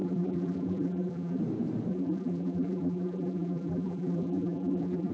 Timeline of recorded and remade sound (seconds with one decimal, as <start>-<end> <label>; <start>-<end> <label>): 0.0-1.4 remade; 1.4-1.9 recorded; 1.9-5.1 remade